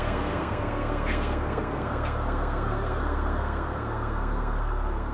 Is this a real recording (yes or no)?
no